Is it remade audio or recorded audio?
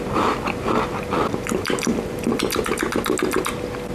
recorded